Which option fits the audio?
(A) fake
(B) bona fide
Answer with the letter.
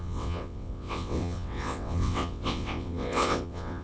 A